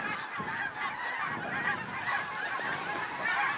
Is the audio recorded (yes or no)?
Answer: yes